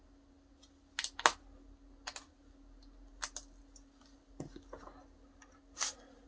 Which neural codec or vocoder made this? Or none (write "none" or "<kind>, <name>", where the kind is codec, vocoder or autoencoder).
none